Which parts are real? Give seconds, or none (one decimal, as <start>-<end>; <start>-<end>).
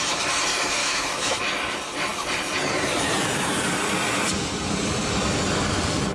0.0-0.8; 1.4-6.1